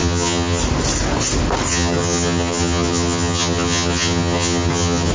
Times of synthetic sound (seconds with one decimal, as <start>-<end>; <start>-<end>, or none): 0.0-0.6; 1.7-5.1